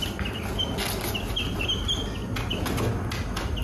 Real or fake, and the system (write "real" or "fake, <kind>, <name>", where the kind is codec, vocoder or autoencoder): real